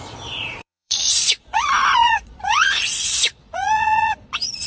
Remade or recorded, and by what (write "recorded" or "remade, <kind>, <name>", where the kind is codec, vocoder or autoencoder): remade, vocoder, Vocos